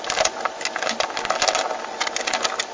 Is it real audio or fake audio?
real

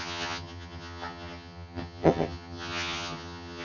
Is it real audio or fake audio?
fake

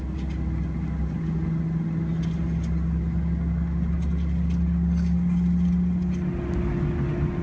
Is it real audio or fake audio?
real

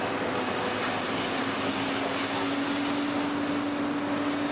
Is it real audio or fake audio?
real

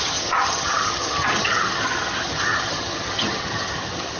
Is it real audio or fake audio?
fake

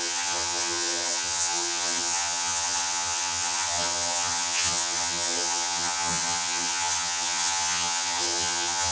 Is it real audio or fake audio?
fake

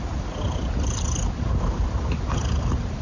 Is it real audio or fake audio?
real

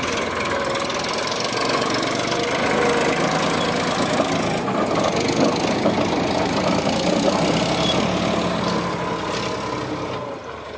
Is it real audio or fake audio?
real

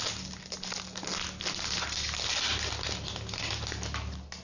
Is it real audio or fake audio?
real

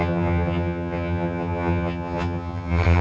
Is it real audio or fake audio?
fake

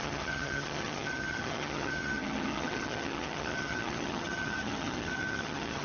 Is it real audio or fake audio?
fake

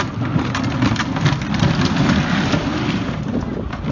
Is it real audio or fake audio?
real